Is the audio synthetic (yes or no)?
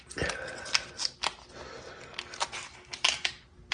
no